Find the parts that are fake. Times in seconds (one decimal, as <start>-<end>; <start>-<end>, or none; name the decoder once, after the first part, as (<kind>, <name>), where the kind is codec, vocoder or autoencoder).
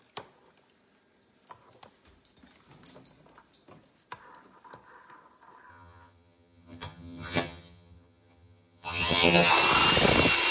5.7-9.5 (vocoder, HiFi-GAN)